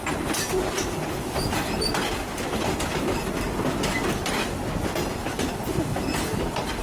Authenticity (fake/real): real